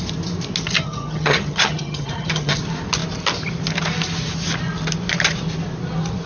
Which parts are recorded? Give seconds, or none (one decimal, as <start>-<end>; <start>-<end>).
0.0-0.8; 2.6-6.3

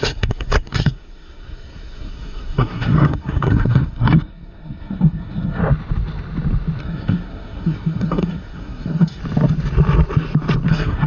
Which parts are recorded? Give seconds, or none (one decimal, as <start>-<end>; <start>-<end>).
5.6-6.8; 9.2-10.7

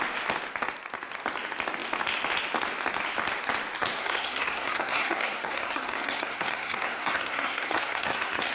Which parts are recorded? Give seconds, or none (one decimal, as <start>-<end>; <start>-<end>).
0.0-4.0